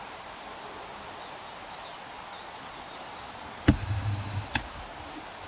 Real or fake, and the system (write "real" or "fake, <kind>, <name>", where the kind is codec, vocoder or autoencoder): real